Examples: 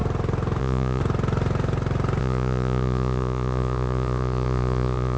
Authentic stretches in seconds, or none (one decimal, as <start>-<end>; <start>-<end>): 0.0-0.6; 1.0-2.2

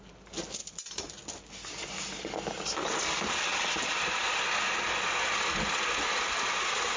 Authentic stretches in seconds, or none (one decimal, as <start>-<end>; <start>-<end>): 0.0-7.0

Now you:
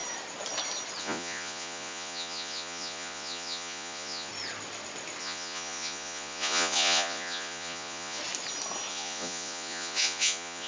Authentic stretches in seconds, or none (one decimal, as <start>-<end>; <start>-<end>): 0.0-1.0; 4.3-5.2; 8.2-8.9

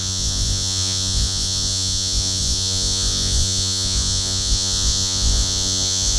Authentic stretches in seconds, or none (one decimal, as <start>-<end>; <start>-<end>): none